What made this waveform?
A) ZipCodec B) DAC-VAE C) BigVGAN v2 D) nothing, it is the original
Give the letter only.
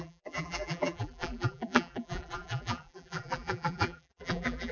C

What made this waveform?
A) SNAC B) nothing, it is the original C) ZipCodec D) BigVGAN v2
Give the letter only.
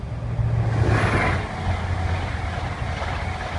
B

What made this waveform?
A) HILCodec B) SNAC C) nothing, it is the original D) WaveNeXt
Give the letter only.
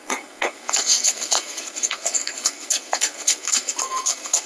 B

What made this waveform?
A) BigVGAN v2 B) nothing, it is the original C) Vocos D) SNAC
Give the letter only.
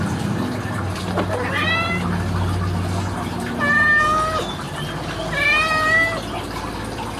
B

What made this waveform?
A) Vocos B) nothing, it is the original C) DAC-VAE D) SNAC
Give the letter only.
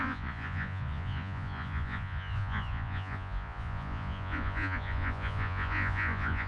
A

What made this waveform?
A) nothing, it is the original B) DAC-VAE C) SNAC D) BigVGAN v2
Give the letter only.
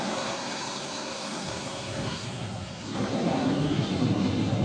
C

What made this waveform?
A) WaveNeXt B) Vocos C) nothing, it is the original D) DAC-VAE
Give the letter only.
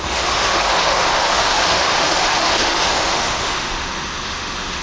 D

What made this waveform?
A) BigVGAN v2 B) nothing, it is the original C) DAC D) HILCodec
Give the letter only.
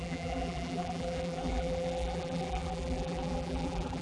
A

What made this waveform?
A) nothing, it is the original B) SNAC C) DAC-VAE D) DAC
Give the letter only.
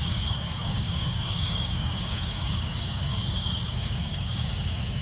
D